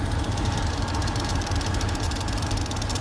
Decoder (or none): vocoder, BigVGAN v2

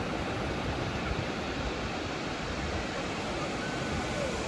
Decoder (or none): none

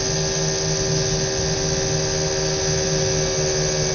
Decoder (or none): none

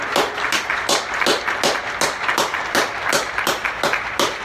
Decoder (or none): none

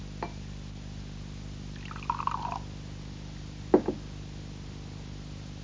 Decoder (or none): none